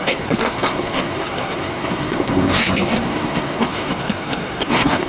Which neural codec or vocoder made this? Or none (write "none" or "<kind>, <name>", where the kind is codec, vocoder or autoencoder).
codec, SNAC